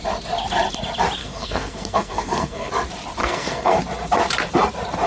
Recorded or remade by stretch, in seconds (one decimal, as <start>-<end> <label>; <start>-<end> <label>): 0.0-1.2 recorded; 1.2-2.7 remade; 2.7-3.2 recorded; 3.2-3.8 remade; 3.8-5.1 recorded